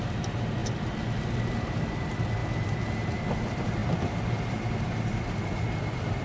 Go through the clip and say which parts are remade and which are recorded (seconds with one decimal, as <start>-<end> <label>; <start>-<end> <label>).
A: 0.0-0.6 remade; 0.6-1.3 recorded; 1.3-6.2 remade